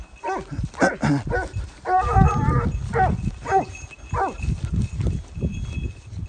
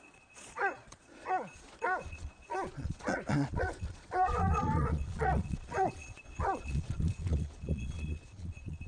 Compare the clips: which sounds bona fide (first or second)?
first